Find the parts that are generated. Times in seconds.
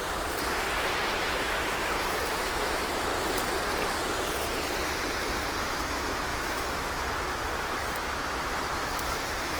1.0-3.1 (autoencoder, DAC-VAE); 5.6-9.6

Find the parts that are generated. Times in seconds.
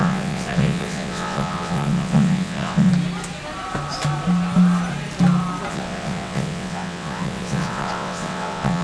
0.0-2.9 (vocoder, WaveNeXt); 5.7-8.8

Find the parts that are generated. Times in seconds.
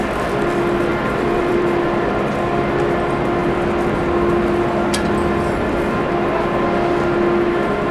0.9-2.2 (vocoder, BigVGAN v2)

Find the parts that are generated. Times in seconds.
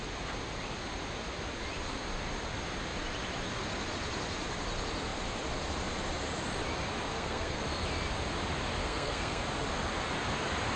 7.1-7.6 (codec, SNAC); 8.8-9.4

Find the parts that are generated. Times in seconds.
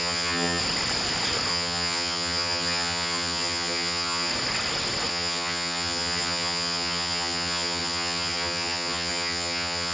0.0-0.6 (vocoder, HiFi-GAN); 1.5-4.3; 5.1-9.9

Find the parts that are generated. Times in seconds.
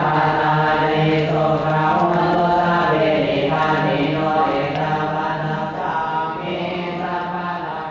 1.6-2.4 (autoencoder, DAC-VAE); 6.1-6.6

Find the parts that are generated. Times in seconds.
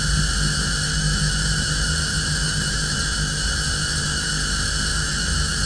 0.9-4.3 (autoencoder, DAC-VAE); 4.9-5.7